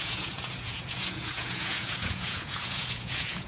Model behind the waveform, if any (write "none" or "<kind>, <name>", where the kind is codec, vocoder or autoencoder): vocoder, Vocos